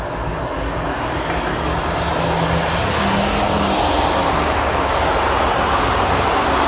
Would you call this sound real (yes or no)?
yes